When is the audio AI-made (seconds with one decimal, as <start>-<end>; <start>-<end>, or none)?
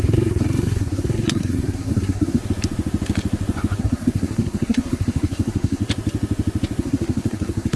0.0-2.4; 3.8-5.8; 6.8-7.8